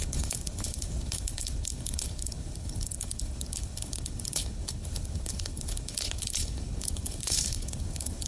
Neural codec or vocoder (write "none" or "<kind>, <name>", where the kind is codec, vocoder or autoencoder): codec, HILCodec